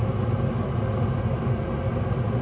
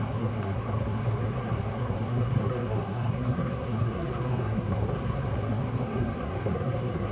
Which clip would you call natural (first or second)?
first